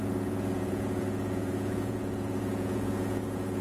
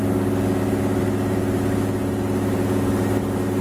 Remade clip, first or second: first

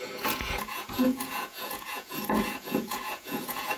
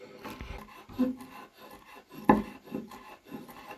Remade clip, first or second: first